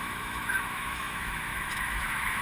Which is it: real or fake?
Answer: fake